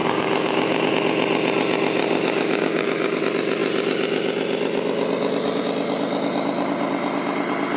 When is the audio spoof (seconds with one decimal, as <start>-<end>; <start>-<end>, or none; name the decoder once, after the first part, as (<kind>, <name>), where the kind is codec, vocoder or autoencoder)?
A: 0.0-0.9 (codec, DAC); 2.0-3.2